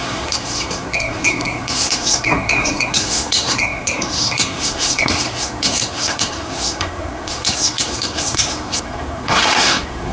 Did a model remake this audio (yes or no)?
yes